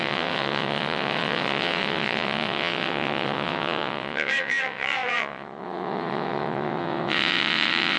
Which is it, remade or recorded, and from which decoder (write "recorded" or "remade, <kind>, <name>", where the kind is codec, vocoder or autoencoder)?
remade, vocoder, WaveNeXt